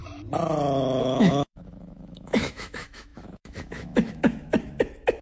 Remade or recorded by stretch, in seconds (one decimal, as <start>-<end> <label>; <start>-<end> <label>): 0.0-1.0 recorded; 1.0-5.2 remade

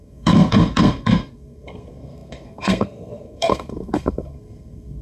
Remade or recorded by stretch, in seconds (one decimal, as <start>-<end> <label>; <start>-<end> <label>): 0.0-5.0 remade

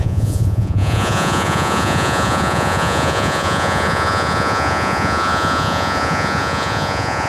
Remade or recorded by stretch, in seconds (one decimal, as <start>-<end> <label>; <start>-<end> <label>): 0.0-7.3 remade

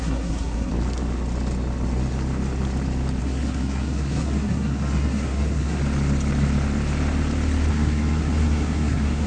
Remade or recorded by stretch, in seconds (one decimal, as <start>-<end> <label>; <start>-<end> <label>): 0.0-0.7 remade; 0.7-3.2 recorded; 3.2-5.8 remade; 5.8-7.7 recorded; 7.7-9.3 remade

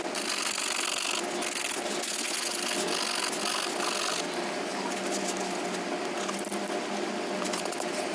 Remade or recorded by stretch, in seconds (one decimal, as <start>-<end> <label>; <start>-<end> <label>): 0.0-8.1 recorded